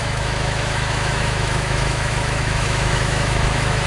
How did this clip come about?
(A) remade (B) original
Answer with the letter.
A